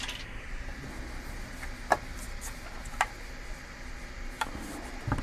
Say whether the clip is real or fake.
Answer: real